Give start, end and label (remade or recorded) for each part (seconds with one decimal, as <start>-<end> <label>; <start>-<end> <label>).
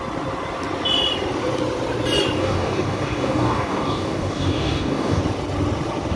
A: 0.0-2.4 recorded; 2.4-5.2 remade; 5.2-6.2 recorded